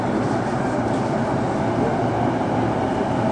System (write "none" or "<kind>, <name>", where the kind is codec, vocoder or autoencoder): none